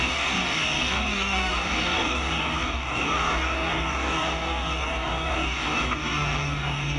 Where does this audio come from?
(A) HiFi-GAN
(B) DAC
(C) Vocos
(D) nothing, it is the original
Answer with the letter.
B